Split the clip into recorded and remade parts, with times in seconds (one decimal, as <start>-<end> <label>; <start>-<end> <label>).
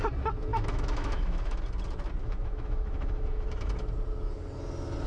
0.0-0.5 recorded; 0.5-1.6 remade; 1.6-2.2 recorded; 2.2-3.7 remade; 3.7-5.1 recorded